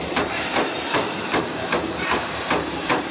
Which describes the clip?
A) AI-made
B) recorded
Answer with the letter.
A